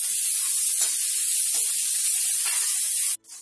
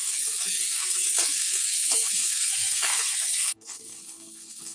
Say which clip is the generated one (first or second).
second